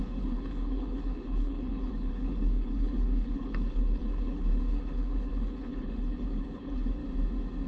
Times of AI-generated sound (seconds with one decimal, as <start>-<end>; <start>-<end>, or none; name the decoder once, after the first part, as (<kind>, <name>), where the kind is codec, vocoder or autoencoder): 0.0-7.0 (codec, HILCodec)